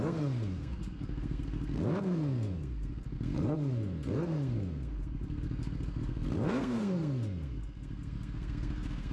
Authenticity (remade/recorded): remade